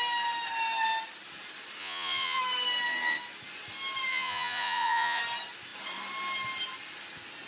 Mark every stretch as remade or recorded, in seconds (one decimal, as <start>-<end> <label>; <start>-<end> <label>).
0.0-1.8 recorded; 1.8-2.4 remade; 2.4-4.1 recorded; 4.1-5.2 remade; 5.2-7.5 recorded